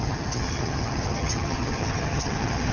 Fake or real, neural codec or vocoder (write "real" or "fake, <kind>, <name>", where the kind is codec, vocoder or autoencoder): fake, vocoder, HiFi-GAN